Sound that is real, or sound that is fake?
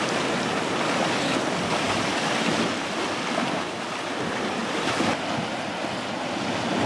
real